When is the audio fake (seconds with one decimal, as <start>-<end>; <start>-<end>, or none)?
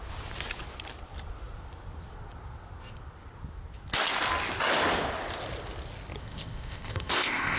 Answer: 6.2-7.6